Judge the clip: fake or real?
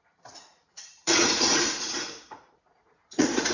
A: fake